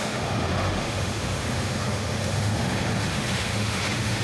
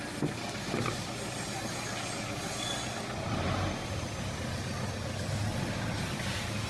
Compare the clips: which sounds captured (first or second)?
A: second